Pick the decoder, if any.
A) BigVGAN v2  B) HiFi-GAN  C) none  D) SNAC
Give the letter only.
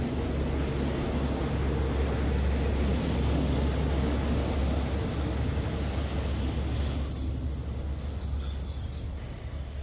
C